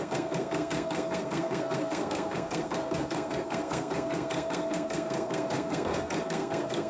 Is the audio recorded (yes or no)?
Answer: no